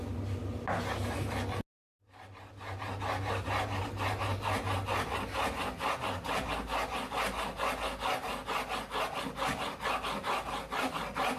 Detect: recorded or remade recorded